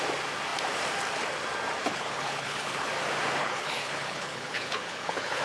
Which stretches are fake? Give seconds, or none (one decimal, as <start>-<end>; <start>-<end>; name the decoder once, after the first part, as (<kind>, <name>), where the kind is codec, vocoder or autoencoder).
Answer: 1.8-2.9 (codec, HILCodec); 3.4-5.4